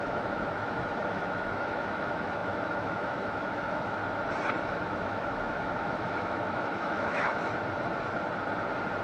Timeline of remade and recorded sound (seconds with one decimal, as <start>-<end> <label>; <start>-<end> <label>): 0.0-4.0 remade; 4.0-4.6 recorded; 4.6-7.5 remade; 7.5-9.0 recorded